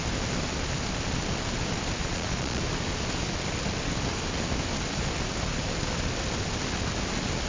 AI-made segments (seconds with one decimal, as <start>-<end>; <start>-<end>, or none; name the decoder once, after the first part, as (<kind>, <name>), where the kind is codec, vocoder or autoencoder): 2.0-2.6 (vocoder, Vocos)